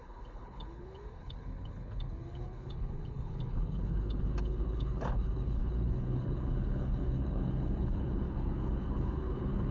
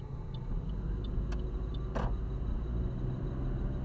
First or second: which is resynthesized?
first